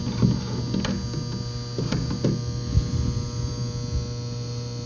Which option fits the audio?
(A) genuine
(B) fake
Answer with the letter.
A